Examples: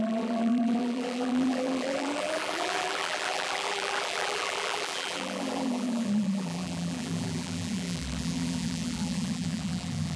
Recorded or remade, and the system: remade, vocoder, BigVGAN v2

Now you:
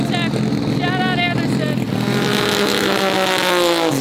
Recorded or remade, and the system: recorded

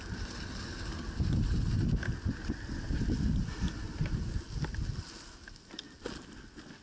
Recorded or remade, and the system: recorded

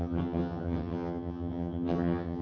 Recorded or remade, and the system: remade, vocoder, HiFi-GAN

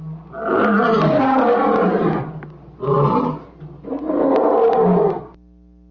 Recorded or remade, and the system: recorded